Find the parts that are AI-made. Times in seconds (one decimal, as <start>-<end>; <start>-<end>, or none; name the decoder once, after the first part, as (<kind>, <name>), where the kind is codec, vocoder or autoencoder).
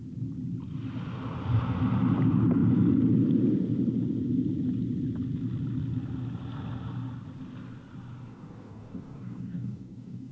8.3-10.3 (codec, DAC)